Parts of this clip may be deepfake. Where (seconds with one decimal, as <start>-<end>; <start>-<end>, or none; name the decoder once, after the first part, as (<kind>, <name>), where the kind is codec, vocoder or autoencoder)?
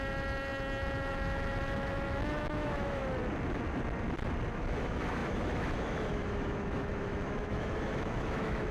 0.0-3.0 (autoencoder, DAC-VAE); 4.5-8.7